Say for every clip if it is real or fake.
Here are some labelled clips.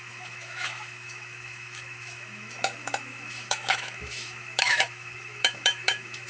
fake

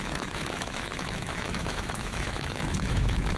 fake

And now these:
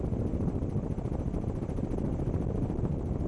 real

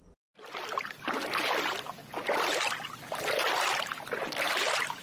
real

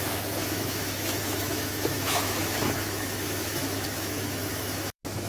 fake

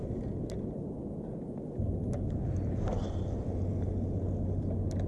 real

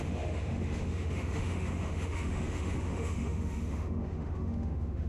fake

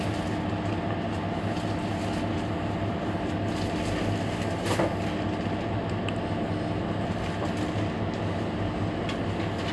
real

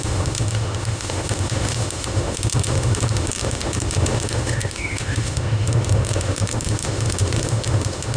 fake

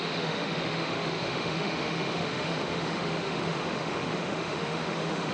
fake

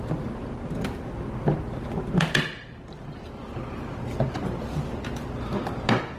real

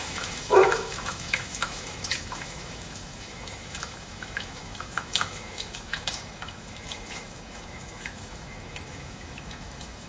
fake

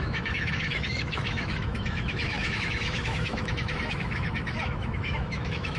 fake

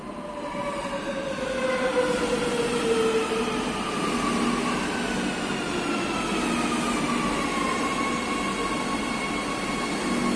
real